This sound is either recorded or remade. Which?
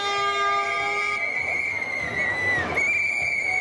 recorded